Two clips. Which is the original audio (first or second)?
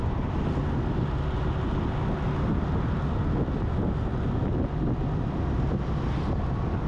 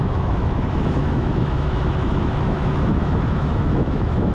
first